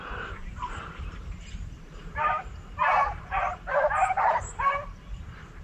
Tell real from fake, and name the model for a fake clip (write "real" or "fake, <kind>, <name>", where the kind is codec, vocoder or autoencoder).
fake, vocoder, BigVGAN v2